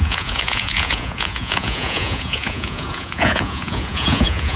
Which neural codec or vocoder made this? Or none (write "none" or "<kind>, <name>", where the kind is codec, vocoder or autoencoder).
vocoder, Vocos